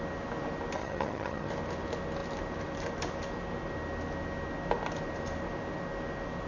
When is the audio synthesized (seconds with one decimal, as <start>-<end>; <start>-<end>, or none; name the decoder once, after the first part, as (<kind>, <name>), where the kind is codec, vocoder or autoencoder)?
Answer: 0.8-1.5 (vocoder, HiFi-GAN)